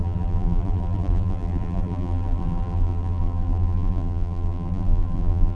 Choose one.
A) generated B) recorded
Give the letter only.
A